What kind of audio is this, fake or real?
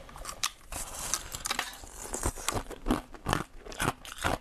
real